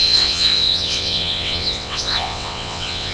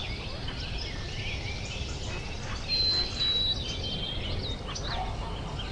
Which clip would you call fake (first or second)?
first